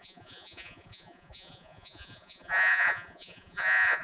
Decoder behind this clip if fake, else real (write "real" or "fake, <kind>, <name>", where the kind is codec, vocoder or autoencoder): fake, vocoder, Vocos